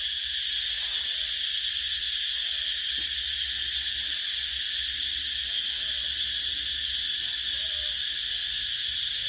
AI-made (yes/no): no